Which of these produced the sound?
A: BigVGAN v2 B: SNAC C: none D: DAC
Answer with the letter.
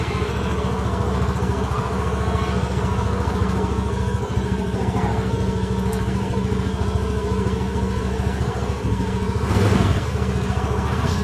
B